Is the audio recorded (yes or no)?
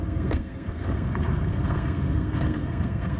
no